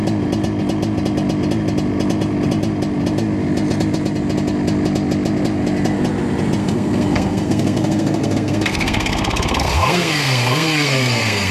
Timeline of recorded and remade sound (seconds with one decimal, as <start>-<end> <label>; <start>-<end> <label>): 0.0-6.6 recorded; 6.6-11.5 remade